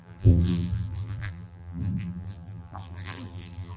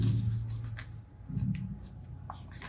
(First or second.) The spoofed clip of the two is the first